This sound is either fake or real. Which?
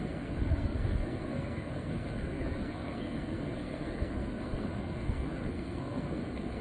fake